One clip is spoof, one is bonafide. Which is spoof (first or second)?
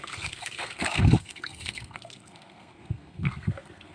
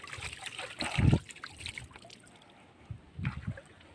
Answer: first